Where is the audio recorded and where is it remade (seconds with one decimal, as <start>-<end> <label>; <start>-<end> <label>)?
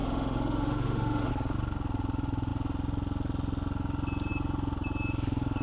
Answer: 0.0-1.3 remade; 1.3-5.6 recorded